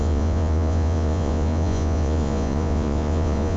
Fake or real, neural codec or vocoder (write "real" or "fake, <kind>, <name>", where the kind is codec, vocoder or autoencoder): fake, vocoder, Vocos